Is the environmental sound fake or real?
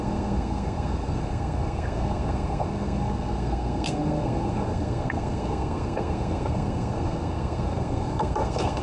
fake